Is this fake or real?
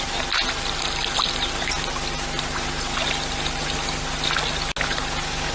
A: real